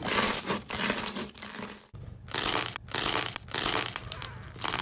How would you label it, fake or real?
real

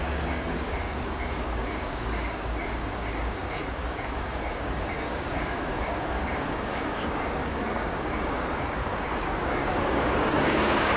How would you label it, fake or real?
fake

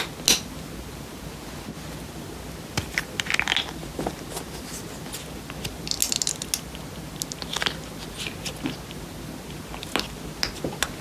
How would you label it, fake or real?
real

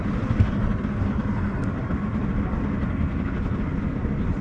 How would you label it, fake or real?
real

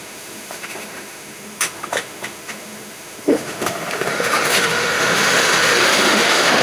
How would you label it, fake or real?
fake